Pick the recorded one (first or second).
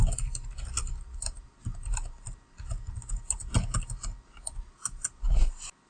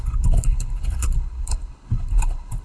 first